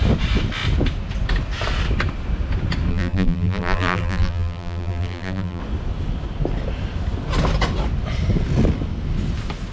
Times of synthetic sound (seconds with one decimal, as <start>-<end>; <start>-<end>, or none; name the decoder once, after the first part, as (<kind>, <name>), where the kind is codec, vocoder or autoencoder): 2.9-5.6 (vocoder, BigVGAN v2)